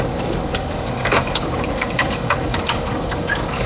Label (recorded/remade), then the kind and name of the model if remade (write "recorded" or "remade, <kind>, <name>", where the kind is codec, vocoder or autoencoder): remade, codec, DAC